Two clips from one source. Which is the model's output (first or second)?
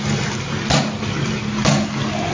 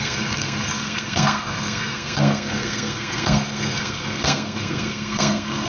second